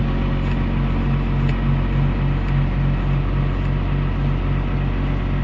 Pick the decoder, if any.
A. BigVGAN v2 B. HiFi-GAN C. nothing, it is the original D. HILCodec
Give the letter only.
C